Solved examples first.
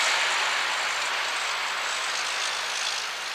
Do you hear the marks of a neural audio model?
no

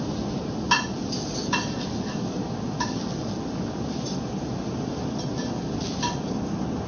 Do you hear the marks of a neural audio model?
no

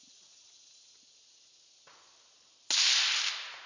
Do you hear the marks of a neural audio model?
no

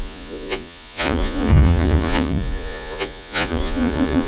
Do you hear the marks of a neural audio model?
yes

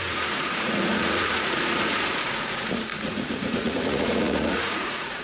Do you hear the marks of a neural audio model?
yes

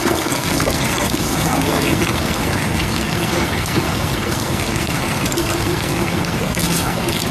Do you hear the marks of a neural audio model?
yes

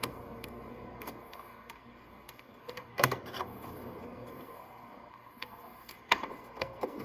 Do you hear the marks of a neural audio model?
yes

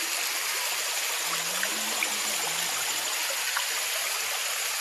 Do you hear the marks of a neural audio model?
no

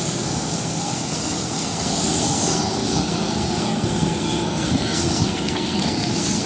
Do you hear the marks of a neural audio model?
yes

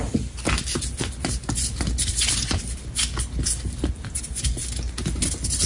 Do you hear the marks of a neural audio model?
no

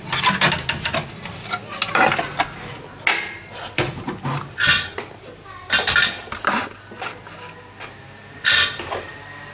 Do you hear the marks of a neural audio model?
no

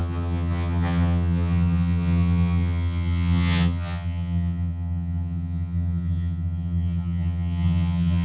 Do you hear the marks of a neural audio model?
yes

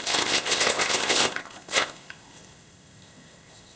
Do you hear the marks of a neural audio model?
yes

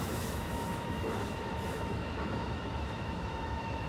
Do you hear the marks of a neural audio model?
yes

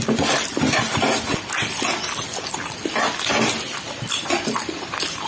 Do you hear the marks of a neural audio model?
no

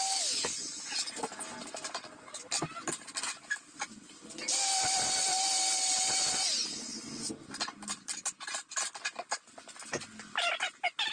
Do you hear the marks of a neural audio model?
no